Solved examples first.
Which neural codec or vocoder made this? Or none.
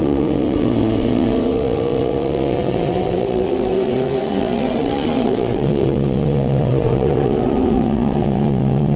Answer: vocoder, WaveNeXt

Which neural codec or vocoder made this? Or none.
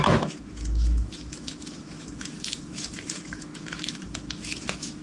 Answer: autoencoder, DAC-VAE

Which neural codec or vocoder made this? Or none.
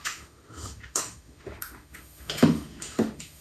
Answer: autoencoder, DAC-VAE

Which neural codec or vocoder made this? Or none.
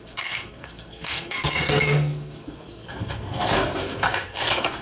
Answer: codec, SNAC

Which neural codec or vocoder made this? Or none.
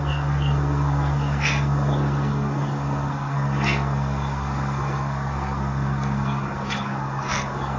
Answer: codec, SNAC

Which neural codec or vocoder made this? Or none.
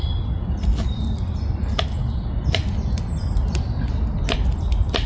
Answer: none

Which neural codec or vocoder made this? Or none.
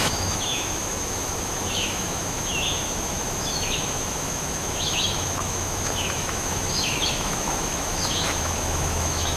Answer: autoencoder, DAC-VAE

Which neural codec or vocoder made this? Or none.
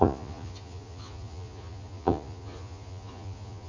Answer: vocoder, Vocos